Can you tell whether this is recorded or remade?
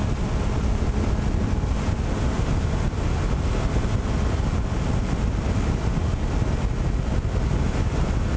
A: recorded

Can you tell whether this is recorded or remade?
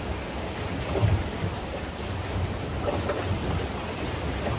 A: recorded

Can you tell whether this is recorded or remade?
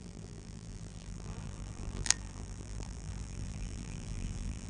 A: remade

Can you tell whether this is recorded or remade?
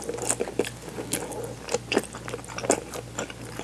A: recorded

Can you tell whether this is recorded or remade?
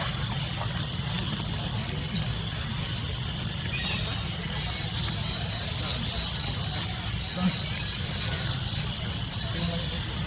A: recorded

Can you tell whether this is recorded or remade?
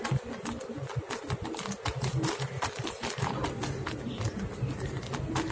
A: recorded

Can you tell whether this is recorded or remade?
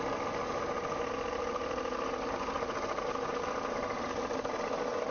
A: recorded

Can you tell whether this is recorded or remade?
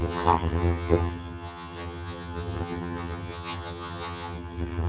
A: remade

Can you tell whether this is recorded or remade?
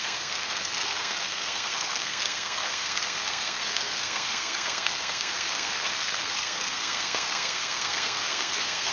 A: remade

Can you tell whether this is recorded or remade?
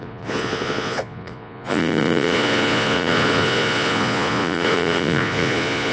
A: remade